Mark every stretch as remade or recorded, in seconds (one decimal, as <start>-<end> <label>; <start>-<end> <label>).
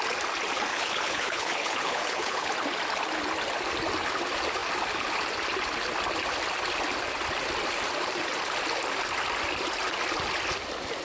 0.0-0.7 recorded; 0.7-2.5 remade; 2.5-11.0 recorded